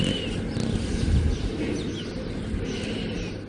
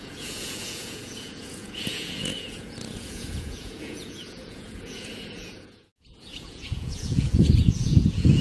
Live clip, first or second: first